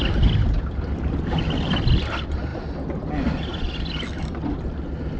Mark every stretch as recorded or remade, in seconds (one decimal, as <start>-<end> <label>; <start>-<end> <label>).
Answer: 0.0-5.2 recorded